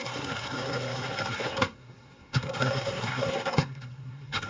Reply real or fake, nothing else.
fake